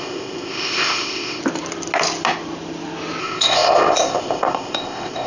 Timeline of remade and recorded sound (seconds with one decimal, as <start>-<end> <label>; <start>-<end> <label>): 0.0-1.4 remade; 1.4-3.2 recorded; 3.2-5.3 remade